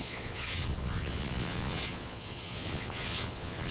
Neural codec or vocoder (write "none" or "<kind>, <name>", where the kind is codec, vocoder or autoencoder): vocoder, Vocos